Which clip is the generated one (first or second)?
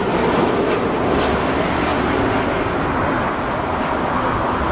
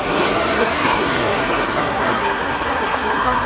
second